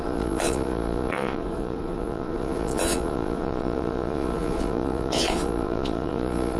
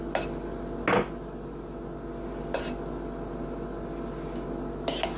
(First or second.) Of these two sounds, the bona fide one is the second